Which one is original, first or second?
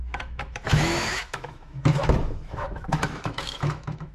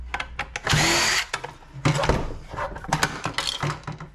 second